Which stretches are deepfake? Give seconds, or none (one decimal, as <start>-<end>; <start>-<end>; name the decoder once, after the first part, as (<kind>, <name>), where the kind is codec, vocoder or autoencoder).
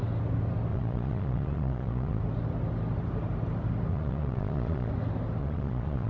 0.7-2.2 (vocoder, Vocos); 3.9-4.9; 5.4-6.1